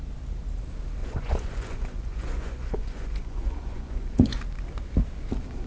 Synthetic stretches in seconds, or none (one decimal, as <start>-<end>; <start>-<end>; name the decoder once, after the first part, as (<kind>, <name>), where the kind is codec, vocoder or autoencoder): 1.0-4.4 (vocoder, Vocos)